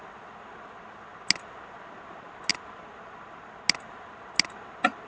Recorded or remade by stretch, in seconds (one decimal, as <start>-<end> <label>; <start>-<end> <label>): 0.0-5.1 recorded